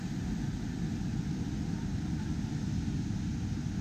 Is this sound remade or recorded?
recorded